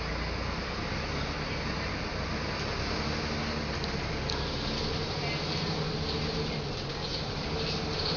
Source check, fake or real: real